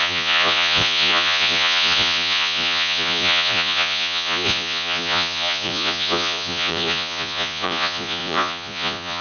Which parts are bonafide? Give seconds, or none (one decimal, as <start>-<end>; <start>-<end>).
none